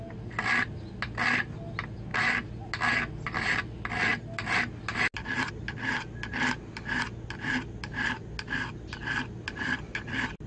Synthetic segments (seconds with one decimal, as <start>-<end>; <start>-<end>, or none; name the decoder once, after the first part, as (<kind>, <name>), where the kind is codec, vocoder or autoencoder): none